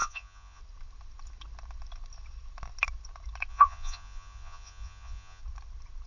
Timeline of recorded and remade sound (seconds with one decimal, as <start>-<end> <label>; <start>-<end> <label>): 0.0-0.6 remade; 0.6-3.5 recorded; 3.5-5.4 remade; 5.4-6.1 recorded